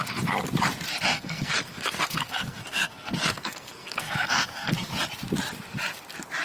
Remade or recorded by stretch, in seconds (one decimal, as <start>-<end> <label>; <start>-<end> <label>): 0.0-1.1 recorded; 1.1-4.9 remade; 4.9-6.4 recorded